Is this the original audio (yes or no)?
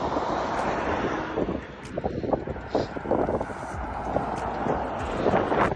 yes